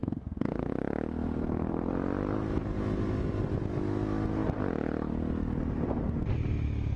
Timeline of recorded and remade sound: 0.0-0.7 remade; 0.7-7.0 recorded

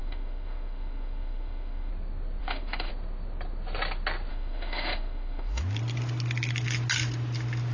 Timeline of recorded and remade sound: 0.0-1.9 remade; 1.9-2.4 recorded; 2.4-2.9 remade; 2.9-4.3 recorded; 4.3-5.6 remade; 5.6-7.7 recorded